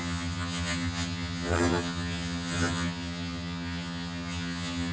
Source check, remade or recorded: remade